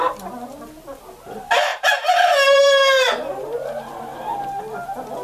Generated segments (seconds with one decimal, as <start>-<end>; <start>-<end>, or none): 1.7-4.4